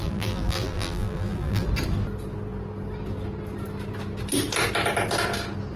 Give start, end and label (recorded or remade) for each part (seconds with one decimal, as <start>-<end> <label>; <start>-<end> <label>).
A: 0.0-1.7 remade; 1.7-5.8 recorded

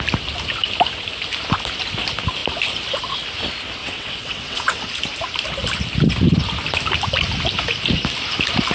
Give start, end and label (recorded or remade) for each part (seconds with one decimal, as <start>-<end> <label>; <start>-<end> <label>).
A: 0.0-3.8 recorded; 3.8-4.9 remade; 4.9-8.7 recorded

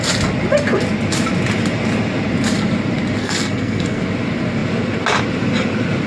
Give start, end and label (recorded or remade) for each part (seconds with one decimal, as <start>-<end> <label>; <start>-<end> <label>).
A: 0.0-3.2 recorded; 3.2-4.0 remade; 4.0-6.1 recorded

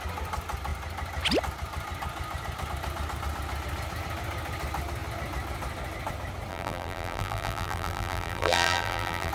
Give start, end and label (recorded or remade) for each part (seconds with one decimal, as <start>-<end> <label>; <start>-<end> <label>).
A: 0.0-6.5 recorded; 6.5-9.3 remade

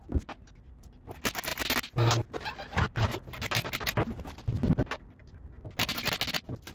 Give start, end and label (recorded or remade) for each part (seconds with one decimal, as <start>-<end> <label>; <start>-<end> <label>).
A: 0.0-6.7 recorded

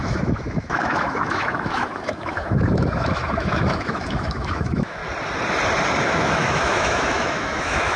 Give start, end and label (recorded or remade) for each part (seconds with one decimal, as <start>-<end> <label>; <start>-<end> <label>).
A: 0.0-5.0 remade; 5.0-6.0 recorded; 6.0-8.0 remade

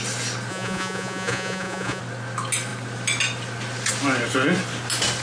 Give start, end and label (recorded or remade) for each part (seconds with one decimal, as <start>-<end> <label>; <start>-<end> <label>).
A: 0.0-0.5 recorded; 0.5-2.0 remade; 2.0-5.2 recorded

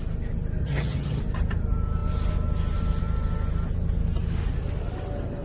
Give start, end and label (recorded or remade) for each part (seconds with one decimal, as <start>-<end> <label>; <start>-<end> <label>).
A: 0.0-0.6 recorded; 0.6-1.2 remade; 1.2-5.4 recorded